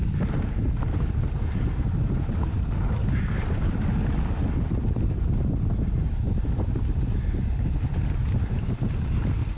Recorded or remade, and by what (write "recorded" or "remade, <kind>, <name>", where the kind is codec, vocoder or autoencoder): recorded